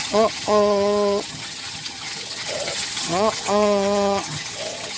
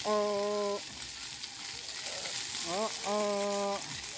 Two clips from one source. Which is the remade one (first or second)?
first